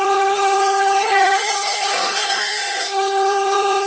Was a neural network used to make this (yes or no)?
yes